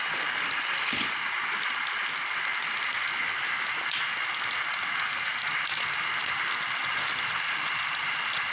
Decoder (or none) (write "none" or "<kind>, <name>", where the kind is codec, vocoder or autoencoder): none